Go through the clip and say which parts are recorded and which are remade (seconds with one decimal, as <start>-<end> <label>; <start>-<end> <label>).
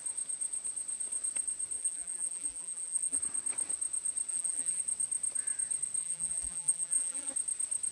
0.0-1.8 recorded; 1.8-3.2 remade; 3.2-4.3 recorded; 4.3-4.8 remade; 4.8-6.0 recorded; 6.0-7.3 remade; 7.3-7.9 recorded